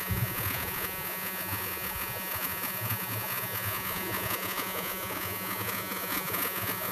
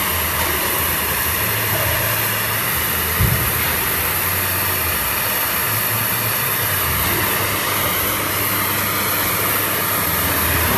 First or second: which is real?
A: second